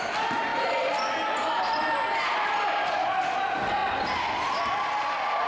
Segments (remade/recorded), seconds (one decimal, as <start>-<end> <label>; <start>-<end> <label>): 0.0-5.5 recorded